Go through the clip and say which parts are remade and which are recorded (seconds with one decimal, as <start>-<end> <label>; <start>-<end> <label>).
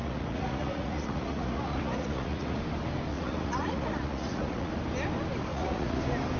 0.0-2.6 remade; 2.6-3.1 recorded; 3.1-4.7 remade; 4.7-5.5 recorded; 5.5-6.0 remade; 6.0-6.4 recorded